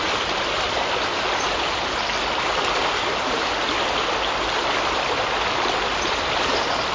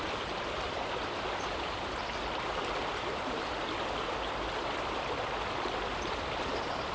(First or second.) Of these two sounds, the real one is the first